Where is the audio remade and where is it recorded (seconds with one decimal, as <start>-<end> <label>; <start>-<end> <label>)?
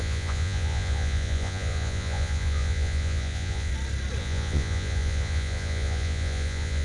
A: 0.0-3.7 remade; 3.7-4.2 recorded; 4.2-6.8 remade